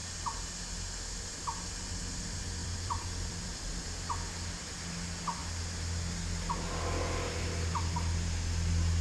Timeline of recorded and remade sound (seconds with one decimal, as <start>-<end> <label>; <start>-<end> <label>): 0.0-2.6 recorded; 2.6-3.8 remade; 3.8-9.0 recorded